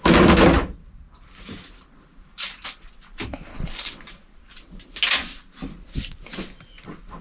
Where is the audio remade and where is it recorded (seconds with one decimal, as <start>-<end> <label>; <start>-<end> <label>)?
0.0-3.5 recorded; 3.5-4.0 remade; 4.0-7.2 recorded